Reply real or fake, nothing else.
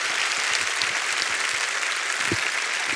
real